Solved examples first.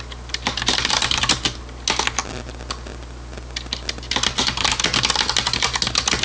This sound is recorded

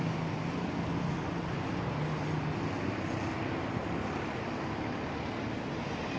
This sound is recorded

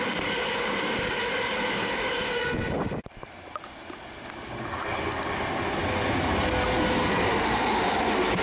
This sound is recorded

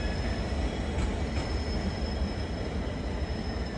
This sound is recorded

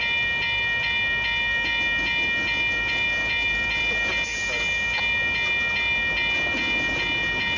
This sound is recorded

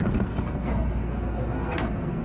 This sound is remade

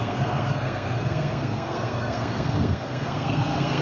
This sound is remade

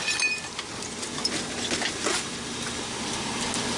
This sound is recorded